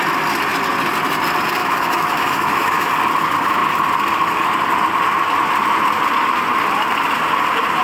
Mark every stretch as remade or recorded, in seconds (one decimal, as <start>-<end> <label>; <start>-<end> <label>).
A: 0.0-1.6 recorded; 1.6-2.9 remade; 2.9-7.8 recorded